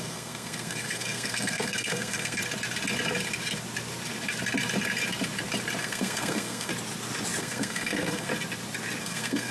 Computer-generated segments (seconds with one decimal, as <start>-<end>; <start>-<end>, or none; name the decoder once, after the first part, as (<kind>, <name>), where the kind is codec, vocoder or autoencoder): 0.0-2.4 (codec, SNAC); 5.8-6.7; 7.4-8.3; 9.0-9.5